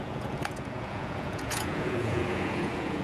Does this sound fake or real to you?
fake